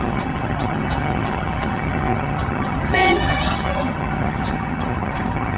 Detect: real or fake fake